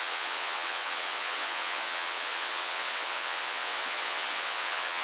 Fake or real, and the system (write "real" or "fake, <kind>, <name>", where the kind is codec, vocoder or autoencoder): fake, vocoder, WaveNeXt